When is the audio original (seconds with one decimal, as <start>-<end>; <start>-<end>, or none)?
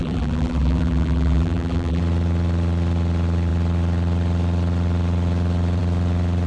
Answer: 2.0-6.5